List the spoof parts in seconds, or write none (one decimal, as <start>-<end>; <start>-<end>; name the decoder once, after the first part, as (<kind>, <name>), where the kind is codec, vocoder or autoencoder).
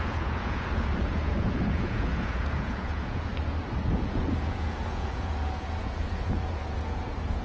0.0-3.3 (vocoder, Vocos); 3.9-7.4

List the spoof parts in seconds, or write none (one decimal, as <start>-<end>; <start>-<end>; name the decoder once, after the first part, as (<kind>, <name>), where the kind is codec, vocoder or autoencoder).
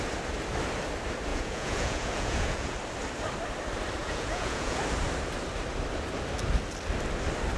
1.3-2.7 (vocoder, Vocos); 4.0-4.8